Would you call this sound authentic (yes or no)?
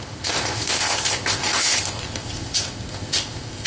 no